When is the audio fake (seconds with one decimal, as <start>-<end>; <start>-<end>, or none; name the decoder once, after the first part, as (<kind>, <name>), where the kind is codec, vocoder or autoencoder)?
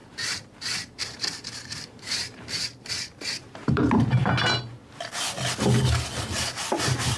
0.0-4.2 (vocoder, BigVGAN v2)